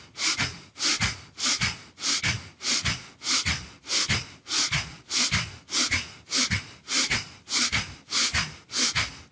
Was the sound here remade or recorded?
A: recorded